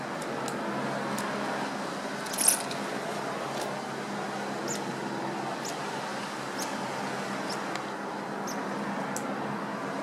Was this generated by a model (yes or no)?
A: no